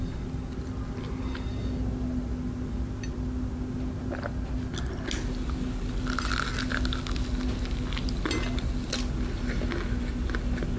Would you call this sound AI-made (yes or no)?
no